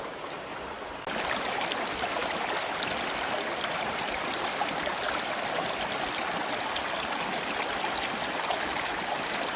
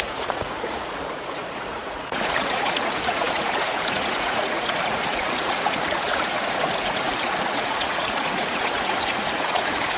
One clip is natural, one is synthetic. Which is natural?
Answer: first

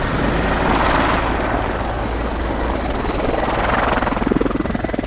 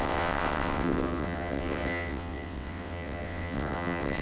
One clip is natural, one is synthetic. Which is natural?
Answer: first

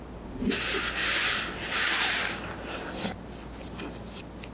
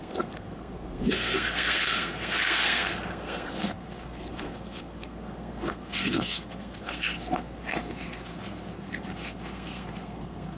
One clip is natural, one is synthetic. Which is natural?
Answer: first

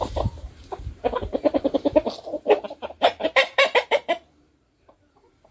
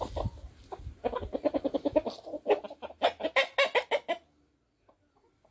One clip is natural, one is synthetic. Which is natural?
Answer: second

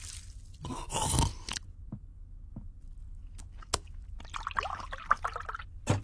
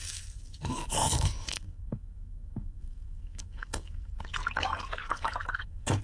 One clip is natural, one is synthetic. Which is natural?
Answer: first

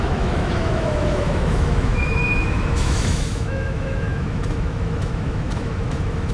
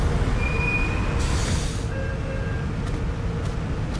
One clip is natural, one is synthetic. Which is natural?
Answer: second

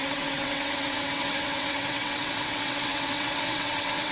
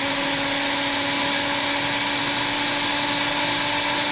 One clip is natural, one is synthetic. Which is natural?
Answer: second